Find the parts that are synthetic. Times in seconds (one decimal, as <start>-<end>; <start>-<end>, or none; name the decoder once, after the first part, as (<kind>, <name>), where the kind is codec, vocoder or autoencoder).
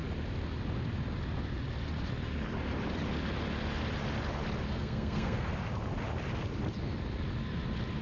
4.7-5.5 (codec, SNAC)